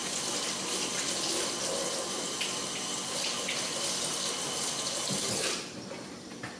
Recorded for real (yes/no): yes